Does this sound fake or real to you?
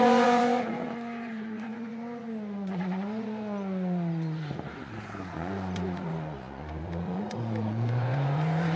fake